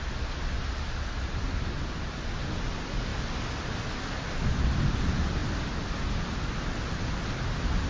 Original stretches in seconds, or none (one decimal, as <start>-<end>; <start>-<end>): 0.0-7.9